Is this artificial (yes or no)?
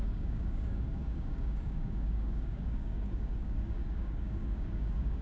yes